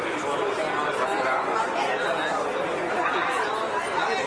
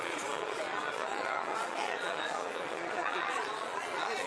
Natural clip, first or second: first